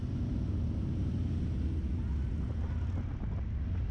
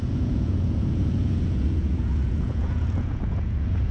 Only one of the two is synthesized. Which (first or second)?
second